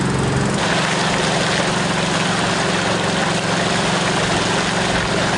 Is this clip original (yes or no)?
yes